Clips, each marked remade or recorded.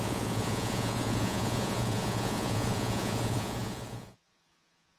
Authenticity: remade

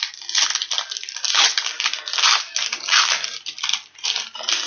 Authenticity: recorded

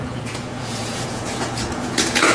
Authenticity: remade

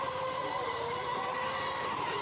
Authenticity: recorded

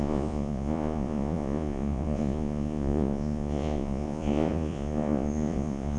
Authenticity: remade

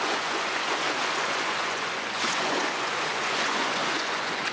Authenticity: remade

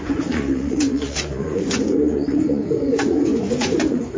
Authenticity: remade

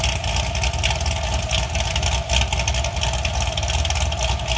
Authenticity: recorded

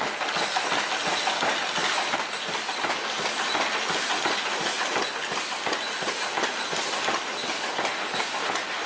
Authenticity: recorded